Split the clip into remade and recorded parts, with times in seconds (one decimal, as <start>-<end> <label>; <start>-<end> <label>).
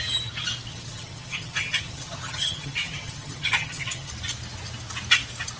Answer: 0.0-0.7 recorded; 0.7-4.1 remade; 4.1-5.6 recorded